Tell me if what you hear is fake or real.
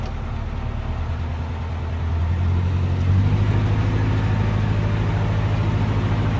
real